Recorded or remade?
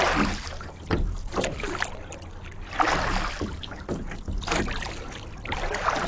recorded